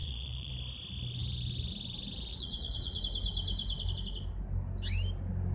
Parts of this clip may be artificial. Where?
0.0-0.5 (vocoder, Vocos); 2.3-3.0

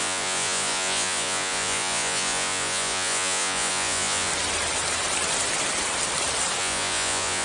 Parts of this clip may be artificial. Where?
0.0-4.3 (vocoder, Vocos); 6.6-7.4

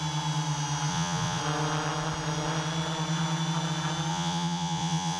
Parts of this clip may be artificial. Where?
0.9-1.4 (vocoder, Vocos); 4.1-5.2

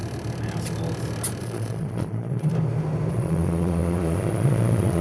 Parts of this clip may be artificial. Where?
1.4-2.5 (vocoder, Vocos); 3.1-5.0

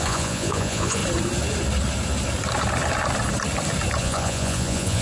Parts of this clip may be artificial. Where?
0.0-1.0 (vocoder, Vocos); 4.0-5.0

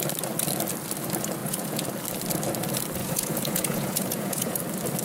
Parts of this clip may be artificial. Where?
1.4-1.9 (vocoder, Vocos); 3.0-4.6

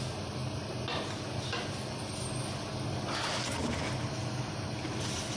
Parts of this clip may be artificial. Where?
none